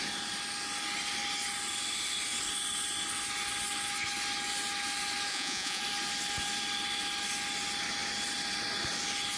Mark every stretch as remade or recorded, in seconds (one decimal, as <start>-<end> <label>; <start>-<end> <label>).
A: 0.0-5.3 recorded; 5.3-5.8 remade; 5.8-9.4 recorded